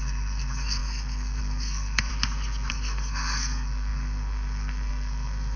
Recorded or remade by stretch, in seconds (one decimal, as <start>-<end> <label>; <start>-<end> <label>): 0.0-2.1 remade; 2.1-2.7 recorded; 2.7-5.6 remade